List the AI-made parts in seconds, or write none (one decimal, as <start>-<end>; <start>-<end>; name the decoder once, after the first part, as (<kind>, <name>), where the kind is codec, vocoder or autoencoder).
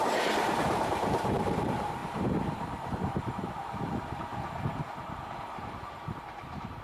0.0-4.3 (vocoder, BigVGAN v2); 5.0-6.8